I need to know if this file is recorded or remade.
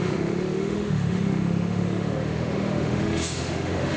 remade